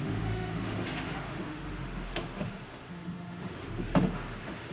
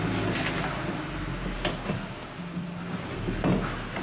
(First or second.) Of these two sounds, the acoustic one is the second